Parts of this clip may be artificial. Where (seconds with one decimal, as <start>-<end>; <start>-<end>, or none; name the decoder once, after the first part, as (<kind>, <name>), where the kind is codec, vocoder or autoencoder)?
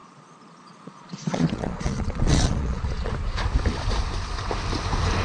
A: 0.0-3.1 (vocoder, Vocos)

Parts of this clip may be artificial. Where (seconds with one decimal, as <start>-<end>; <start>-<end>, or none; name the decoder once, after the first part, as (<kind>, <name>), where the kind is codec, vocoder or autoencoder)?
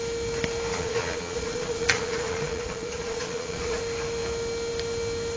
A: 0.7-3.8 (vocoder, Vocos)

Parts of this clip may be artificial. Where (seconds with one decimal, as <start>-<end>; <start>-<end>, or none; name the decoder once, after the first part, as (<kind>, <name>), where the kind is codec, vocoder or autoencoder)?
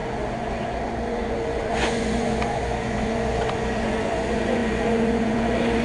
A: 0.0-5.8 (vocoder, Vocos)